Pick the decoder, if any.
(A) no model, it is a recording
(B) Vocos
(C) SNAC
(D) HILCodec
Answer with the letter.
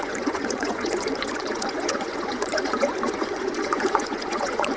B